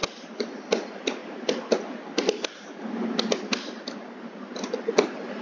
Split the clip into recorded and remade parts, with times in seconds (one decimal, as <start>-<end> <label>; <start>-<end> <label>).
0.0-5.4 recorded